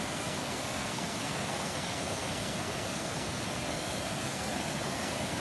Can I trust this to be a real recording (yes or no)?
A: no